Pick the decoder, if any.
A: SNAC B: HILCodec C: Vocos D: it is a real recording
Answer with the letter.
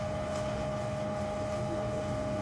B